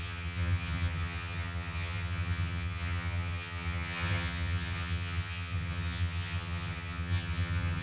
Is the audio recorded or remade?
remade